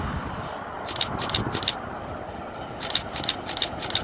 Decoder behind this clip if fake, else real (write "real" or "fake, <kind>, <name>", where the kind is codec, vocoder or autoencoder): real